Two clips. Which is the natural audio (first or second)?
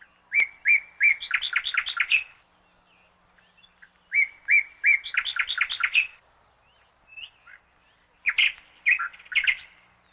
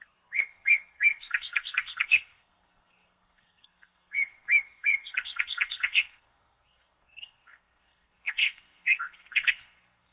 first